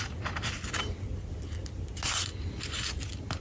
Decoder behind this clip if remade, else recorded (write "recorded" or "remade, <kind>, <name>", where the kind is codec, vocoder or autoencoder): recorded